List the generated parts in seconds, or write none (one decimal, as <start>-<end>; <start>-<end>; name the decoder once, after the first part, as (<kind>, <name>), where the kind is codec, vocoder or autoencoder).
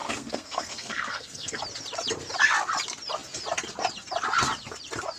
0.0-1.6 (codec, SNAC)